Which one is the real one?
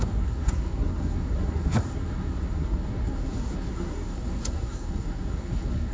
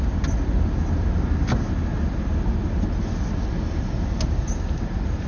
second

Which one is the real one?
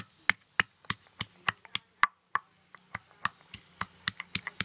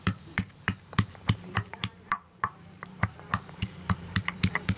first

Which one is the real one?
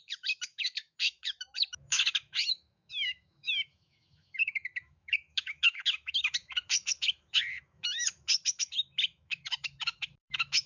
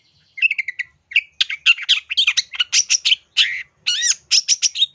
second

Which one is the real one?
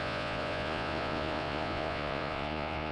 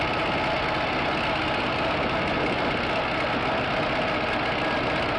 second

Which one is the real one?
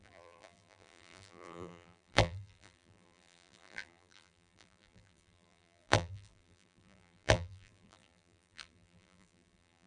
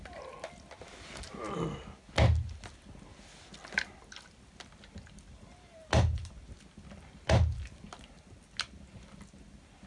second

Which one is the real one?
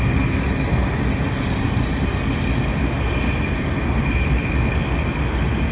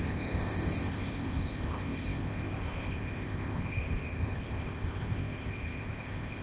first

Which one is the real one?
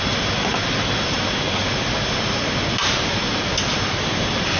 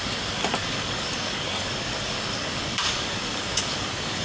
first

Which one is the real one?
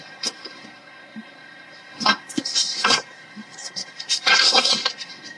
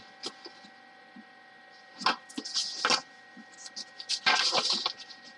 second